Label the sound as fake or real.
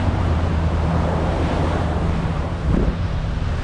fake